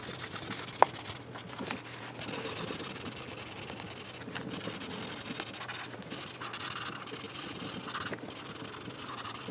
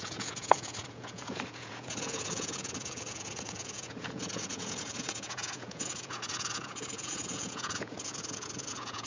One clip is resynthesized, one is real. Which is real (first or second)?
first